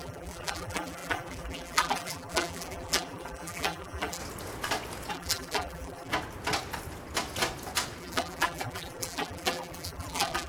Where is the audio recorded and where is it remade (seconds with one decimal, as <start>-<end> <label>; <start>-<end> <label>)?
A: 0.0-4.2 remade; 4.2-5.1 recorded; 5.1-6.1 remade; 6.1-8.0 recorded; 8.0-10.5 remade